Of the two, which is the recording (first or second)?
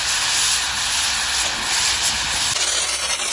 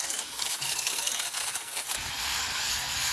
first